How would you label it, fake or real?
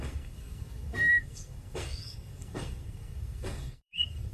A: fake